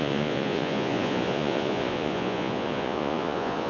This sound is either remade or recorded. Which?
remade